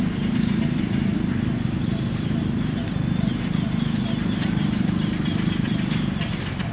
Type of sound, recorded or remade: recorded